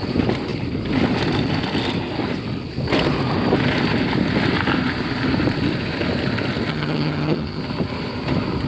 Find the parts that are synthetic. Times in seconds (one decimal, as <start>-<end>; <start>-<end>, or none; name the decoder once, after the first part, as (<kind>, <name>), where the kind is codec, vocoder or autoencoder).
6.7-7.6 (vocoder, HiFi-GAN)